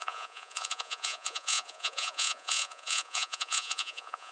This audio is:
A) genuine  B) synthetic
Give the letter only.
B